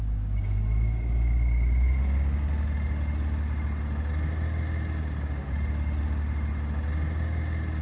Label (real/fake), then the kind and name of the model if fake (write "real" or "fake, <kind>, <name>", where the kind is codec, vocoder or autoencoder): real